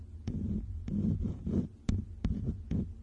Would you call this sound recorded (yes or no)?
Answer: no